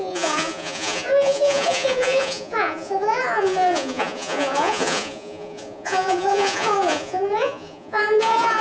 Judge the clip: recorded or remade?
remade